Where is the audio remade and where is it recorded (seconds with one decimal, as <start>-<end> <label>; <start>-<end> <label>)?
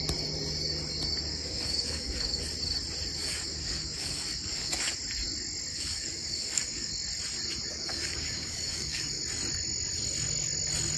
0.0-1.3 recorded; 1.3-2.4 remade; 2.4-3.2 recorded; 3.2-5.0 remade; 5.0-5.7 recorded; 5.7-6.9 remade; 6.9-7.7 recorded; 7.7-9.2 remade; 9.2-11.0 recorded